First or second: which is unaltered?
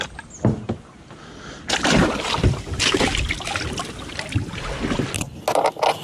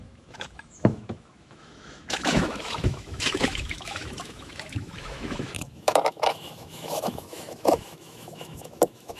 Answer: first